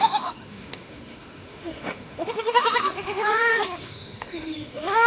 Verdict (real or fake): fake